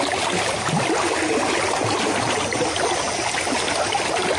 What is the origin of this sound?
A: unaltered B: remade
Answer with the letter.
A